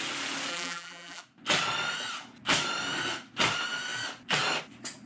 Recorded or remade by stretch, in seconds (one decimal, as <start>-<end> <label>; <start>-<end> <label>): 0.0-0.5 recorded; 0.5-1.2 remade; 1.2-5.1 recorded